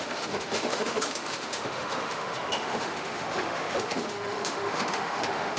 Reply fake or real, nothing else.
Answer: fake